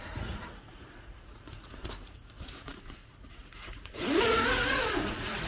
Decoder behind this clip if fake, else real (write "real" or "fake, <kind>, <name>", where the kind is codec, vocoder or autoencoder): fake, vocoder, Vocos